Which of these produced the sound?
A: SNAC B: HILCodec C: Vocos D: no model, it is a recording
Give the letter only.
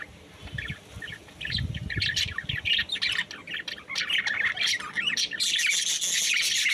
D